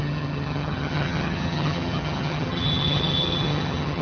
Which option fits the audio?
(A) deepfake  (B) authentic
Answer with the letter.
A